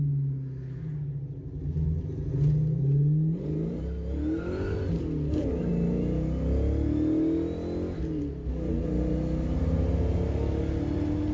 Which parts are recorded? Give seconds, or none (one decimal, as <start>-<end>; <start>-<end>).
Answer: 0.0-11.3